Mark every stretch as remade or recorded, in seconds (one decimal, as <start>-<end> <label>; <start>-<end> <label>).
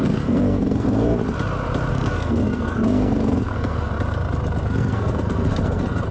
0.0-1.2 remade; 1.2-1.9 recorded; 1.9-3.9 remade; 3.9-4.6 recorded; 4.6-6.1 remade